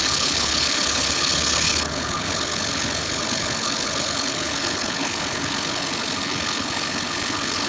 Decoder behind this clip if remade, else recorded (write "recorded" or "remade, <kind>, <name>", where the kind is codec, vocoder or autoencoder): remade, codec, HILCodec